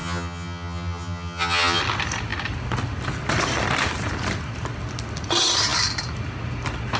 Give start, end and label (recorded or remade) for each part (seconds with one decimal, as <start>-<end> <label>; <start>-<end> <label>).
0.0-1.8 remade; 1.8-7.0 recorded